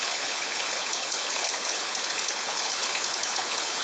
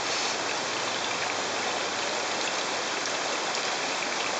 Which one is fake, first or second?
first